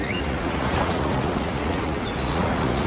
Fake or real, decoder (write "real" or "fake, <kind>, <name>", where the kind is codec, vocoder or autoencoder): fake, vocoder, Vocos